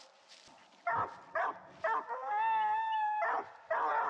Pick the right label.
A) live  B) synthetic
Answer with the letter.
A